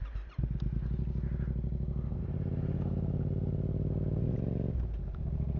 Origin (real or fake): real